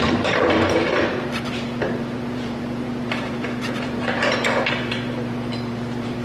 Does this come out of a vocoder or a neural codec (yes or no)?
yes